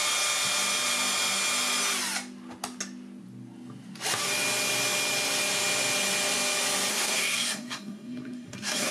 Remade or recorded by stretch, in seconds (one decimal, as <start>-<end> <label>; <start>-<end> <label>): 0.0-6.9 recorded; 6.9-8.9 remade

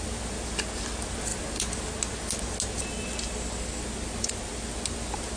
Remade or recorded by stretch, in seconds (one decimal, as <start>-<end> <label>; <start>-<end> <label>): 0.0-5.4 recorded

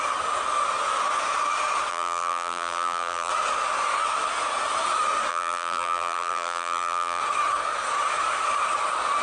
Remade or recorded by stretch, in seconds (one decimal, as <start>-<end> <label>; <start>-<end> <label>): 0.0-1.9 recorded; 1.9-3.3 remade; 3.3-5.3 recorded; 5.3-7.2 remade; 7.2-9.2 recorded

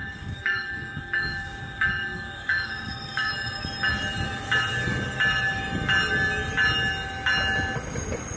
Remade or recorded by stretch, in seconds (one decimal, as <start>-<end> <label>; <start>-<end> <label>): 0.0-3.3 remade; 3.3-8.4 recorded

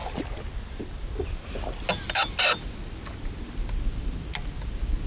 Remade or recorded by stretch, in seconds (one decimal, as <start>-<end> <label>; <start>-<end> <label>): 0.0-5.1 recorded

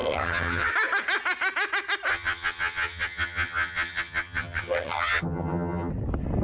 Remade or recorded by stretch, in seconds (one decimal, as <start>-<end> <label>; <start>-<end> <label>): 0.0-0.7 remade; 0.7-2.1 recorded; 2.1-5.9 remade; 5.9-6.4 recorded

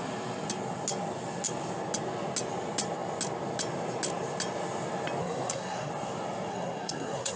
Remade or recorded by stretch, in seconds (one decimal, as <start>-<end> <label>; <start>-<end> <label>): 0.0-5.2 recorded; 5.2-5.9 remade; 5.9-6.5 recorded; 6.5-7.4 remade

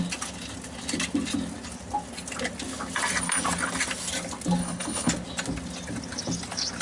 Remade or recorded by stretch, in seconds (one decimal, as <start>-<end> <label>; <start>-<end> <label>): 0.0-4.6 recorded; 4.6-5.1 remade; 5.1-6.8 recorded